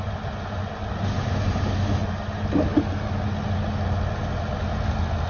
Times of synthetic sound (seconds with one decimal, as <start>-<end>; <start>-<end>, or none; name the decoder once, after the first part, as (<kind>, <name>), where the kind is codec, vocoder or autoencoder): none